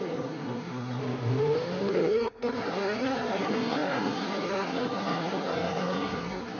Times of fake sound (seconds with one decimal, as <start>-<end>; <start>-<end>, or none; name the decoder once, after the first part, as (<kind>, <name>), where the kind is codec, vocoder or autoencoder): 0.0-1.0 (codec, SNAC); 1.9-6.6